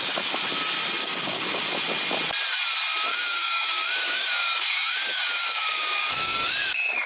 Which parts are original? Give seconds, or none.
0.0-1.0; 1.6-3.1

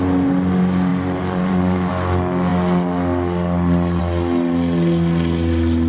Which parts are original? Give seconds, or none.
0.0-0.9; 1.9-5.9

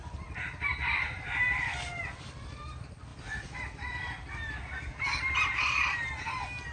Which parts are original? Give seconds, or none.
0.0-6.7

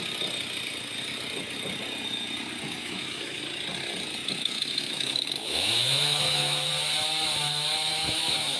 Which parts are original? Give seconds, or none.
0.0-2.8; 3.4-4.2; 6.7-7.9

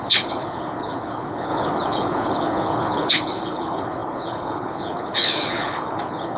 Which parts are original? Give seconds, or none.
none

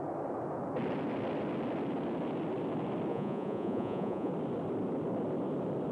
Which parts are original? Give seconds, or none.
0.0-3.1; 4.3-5.9